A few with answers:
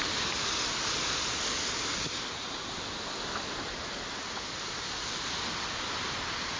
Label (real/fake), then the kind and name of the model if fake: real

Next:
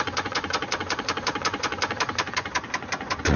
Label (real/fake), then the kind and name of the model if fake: fake, vocoder, Vocos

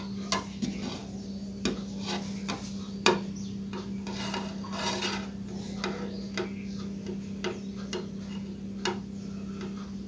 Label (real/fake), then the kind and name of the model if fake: real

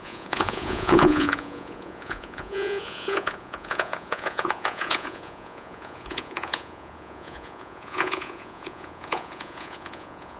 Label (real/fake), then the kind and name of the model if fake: fake, vocoder, Vocos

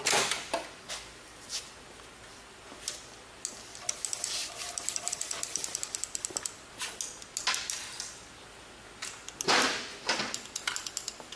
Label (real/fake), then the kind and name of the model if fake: real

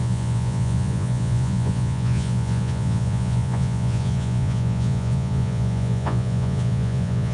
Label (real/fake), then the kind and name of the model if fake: fake, vocoder, Vocos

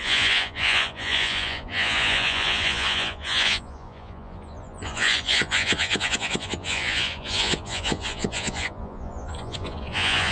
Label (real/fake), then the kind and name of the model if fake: fake, vocoder, Vocos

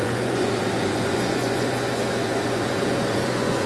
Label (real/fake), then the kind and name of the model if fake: fake, vocoder, Vocos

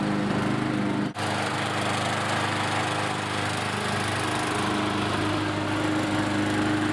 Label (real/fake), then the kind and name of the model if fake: real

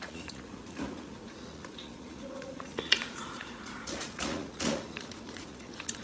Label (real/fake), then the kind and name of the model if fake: fake, vocoder, Vocos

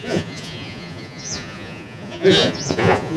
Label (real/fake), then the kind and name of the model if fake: fake, vocoder, Vocos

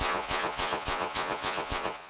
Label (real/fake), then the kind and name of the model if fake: fake, vocoder, Vocos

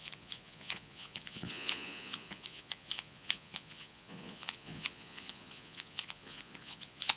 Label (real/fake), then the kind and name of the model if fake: fake, vocoder, Vocos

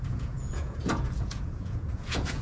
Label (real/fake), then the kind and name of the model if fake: fake, vocoder, Vocos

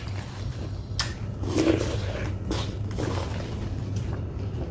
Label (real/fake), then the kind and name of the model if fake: real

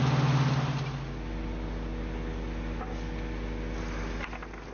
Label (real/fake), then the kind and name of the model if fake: real